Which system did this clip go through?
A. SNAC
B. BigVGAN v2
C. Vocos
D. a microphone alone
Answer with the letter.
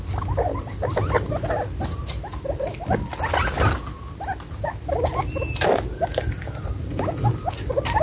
D